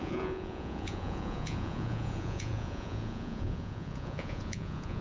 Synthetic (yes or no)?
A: yes